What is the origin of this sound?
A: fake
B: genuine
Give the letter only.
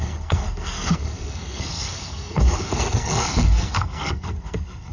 A